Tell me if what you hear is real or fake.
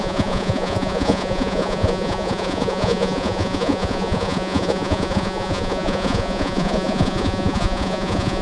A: fake